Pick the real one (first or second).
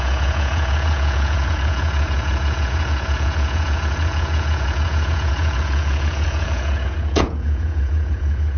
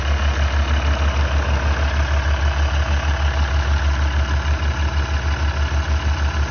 second